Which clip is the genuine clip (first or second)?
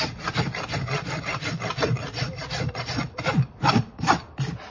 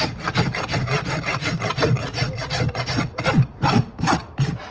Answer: second